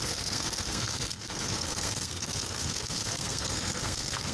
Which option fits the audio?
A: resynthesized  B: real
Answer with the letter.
A